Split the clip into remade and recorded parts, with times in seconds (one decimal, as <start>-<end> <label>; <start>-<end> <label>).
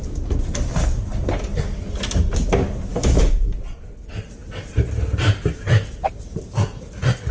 0.0-2.9 recorded; 2.9-3.6 remade; 3.6-7.3 recorded